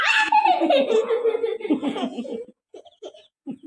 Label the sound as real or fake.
fake